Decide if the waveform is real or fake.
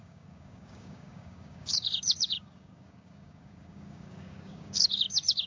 fake